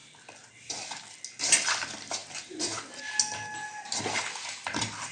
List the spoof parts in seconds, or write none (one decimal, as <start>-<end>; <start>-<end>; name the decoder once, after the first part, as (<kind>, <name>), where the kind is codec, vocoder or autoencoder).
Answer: none